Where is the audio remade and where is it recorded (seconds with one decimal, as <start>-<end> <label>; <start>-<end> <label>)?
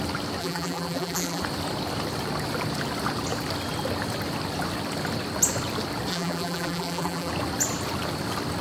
0.0-0.4 recorded; 0.4-1.4 remade; 1.4-6.1 recorded; 6.1-7.3 remade; 7.3-8.6 recorded